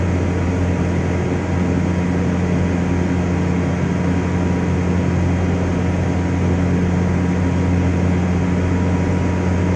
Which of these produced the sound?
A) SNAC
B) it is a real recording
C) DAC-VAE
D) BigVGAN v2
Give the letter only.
B